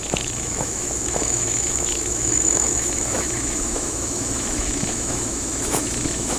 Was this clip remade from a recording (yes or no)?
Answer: yes